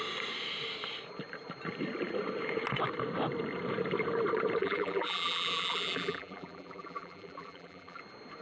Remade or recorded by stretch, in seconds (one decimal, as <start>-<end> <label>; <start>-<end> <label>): 0.0-4.6 recorded; 4.6-8.0 remade; 8.0-8.4 recorded